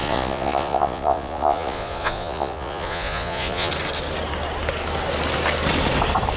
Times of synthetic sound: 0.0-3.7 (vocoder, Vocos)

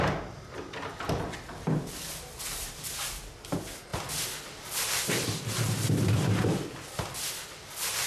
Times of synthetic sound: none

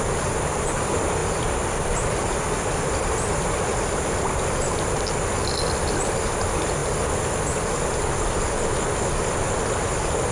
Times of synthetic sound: none